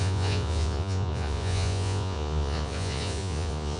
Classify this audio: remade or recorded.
remade